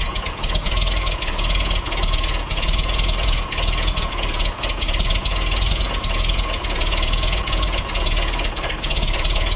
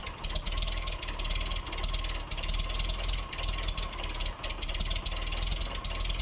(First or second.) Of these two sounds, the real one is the second